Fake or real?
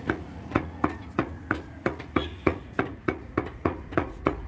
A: fake